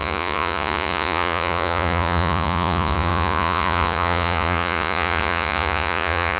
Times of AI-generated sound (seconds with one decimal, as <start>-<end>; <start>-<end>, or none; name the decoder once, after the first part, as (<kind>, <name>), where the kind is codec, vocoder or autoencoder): 0.0-6.4 (vocoder, Vocos)